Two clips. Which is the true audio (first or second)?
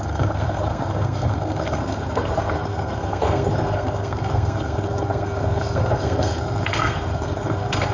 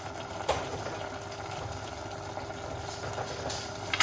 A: second